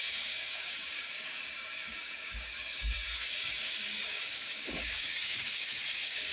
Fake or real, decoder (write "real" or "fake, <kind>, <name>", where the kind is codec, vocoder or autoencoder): fake, codec, DAC